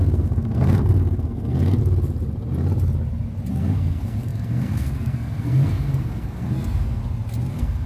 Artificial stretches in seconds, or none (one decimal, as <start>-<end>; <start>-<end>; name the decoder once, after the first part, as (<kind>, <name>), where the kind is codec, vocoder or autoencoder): 0.0-1.8 (codec, SNAC); 3.5-7.0; 7.5-7.9